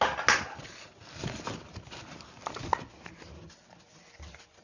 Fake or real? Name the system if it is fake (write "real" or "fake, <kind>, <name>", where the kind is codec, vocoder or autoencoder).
real